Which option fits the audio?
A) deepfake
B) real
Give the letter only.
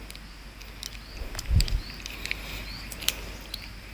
B